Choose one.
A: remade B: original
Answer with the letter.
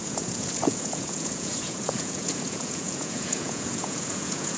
A